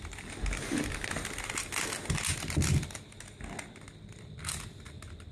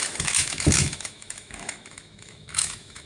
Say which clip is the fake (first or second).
second